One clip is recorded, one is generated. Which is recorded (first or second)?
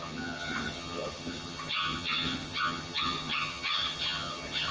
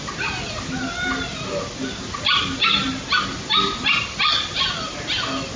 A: second